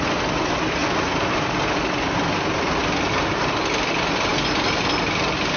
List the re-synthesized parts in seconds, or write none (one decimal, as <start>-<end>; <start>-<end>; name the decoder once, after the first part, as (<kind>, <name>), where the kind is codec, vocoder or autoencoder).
none